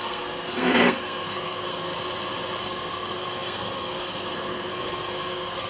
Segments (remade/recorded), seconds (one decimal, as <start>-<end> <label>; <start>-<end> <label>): 0.0-1.9 remade; 1.9-2.6 recorded; 2.6-5.7 remade